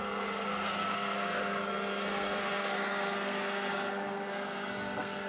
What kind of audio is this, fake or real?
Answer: fake